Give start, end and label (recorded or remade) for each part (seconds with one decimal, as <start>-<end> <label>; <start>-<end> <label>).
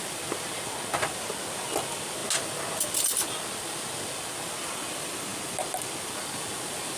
0.0-7.0 recorded